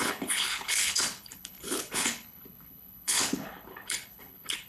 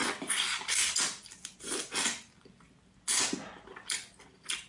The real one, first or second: second